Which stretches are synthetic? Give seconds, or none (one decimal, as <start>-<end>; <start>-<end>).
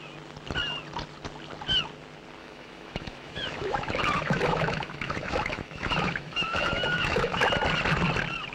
2.4-7.4